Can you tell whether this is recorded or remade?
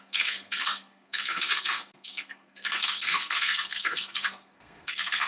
remade